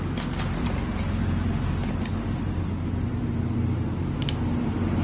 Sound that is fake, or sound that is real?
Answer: real